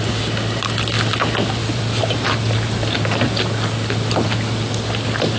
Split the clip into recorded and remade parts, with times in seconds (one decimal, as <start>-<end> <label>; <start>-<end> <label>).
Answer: 0.0-1.6 recorded; 1.6-2.3 remade; 2.3-5.4 recorded